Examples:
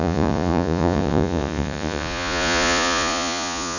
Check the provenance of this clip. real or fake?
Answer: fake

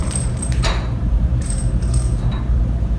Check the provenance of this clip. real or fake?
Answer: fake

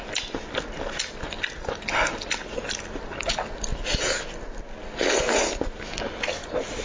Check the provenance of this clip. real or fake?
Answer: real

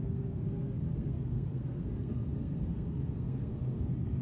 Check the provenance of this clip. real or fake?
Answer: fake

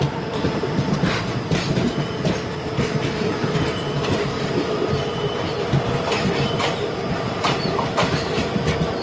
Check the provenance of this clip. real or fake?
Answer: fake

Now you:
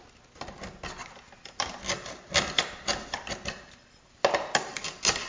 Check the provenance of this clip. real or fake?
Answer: real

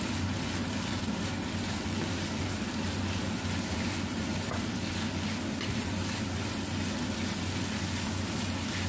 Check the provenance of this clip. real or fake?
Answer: real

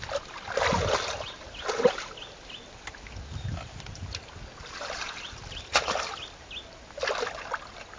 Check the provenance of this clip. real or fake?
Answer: real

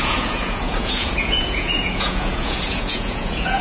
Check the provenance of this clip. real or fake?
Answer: fake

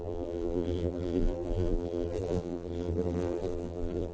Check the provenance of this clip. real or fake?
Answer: fake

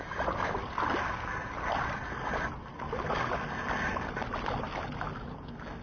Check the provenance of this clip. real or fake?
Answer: real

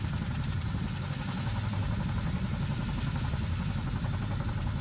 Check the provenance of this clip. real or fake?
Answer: real